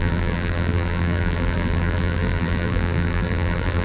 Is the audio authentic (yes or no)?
no